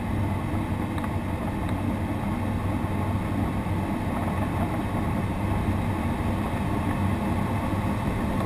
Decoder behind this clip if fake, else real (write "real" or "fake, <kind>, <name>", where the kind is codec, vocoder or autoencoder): real